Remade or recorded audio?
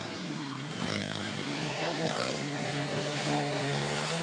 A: remade